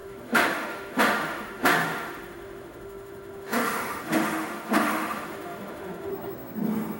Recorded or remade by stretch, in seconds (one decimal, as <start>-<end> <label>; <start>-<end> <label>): 0.0-6.1 remade; 6.1-7.0 recorded